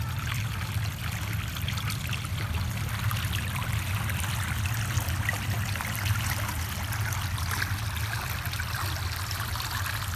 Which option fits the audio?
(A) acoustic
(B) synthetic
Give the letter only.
A